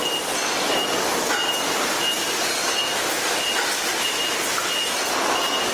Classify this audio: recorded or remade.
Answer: recorded